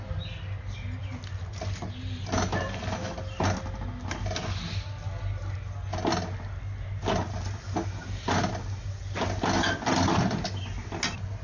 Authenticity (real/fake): real